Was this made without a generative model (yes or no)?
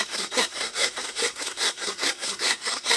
no